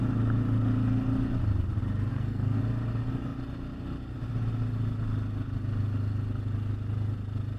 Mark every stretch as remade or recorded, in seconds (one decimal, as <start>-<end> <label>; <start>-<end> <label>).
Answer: 0.0-2.1 recorded; 2.1-2.6 remade; 2.6-7.6 recorded